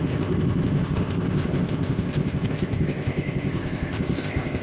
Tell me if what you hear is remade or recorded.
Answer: remade